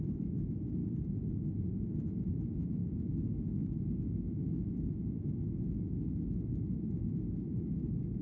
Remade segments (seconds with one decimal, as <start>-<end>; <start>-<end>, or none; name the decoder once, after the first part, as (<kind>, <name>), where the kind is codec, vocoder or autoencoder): 0.0-0.8 (autoencoder, DAC-VAE); 1.6-8.2